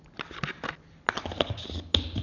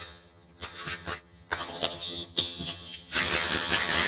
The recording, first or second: first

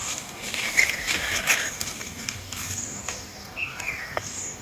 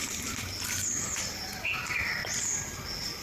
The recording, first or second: second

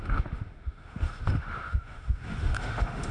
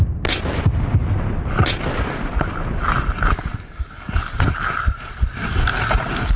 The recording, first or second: second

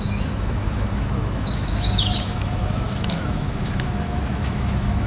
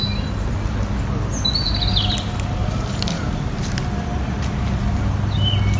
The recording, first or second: second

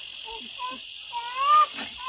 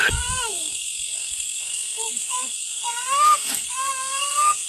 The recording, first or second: first